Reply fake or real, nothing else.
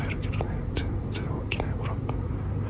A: real